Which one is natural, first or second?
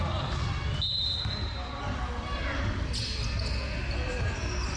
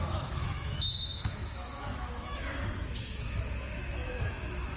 first